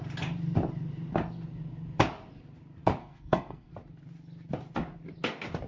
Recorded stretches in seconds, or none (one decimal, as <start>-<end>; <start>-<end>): 0.0-3.0; 3.7-5.7